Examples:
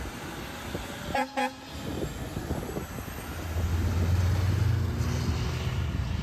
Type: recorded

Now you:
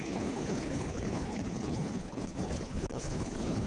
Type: remade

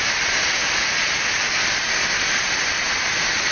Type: recorded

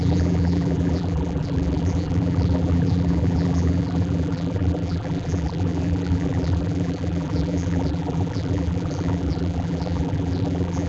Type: remade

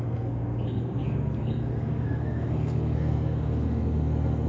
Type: remade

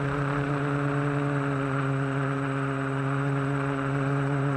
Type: recorded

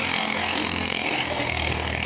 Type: remade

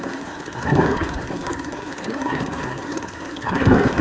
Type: remade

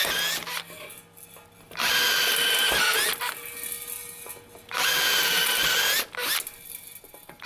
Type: recorded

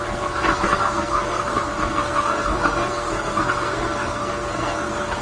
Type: remade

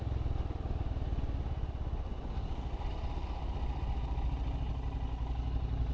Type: recorded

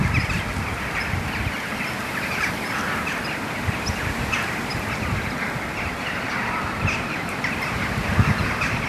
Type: recorded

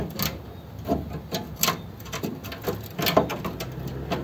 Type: recorded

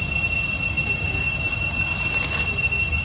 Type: recorded